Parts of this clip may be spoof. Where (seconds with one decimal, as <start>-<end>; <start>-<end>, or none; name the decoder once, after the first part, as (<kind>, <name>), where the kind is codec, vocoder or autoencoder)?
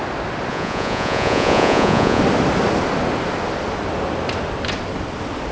0.5-2.2 (vocoder, Vocos)